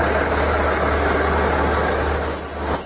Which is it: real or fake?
real